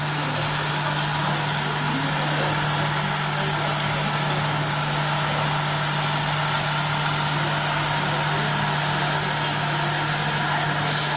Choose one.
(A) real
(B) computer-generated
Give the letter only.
A